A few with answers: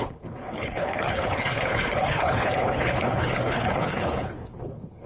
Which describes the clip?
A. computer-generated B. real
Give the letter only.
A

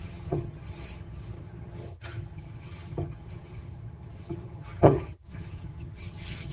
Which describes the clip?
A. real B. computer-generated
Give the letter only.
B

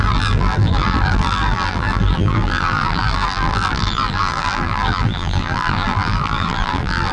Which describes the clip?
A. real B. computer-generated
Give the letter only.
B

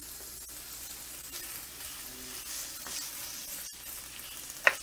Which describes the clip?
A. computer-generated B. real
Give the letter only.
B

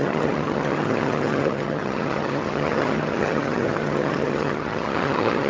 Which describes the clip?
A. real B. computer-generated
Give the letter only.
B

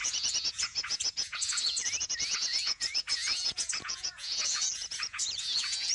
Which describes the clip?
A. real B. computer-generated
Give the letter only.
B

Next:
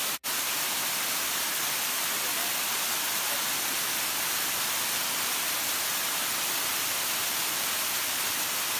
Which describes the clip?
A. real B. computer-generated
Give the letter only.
A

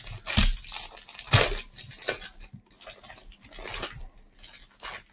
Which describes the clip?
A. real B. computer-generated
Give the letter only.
A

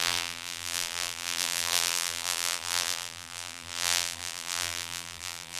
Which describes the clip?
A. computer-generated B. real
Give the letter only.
A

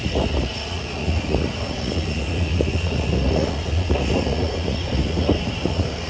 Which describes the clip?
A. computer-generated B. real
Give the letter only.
A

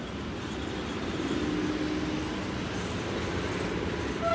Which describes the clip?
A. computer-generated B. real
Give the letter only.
B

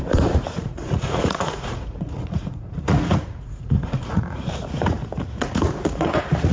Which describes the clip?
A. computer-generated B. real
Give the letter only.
A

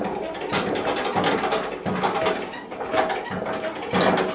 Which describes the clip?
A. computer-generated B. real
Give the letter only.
B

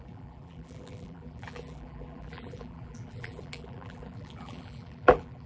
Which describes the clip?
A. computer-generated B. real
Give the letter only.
A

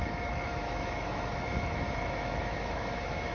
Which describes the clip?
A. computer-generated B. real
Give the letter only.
A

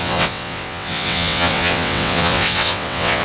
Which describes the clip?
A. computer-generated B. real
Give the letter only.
A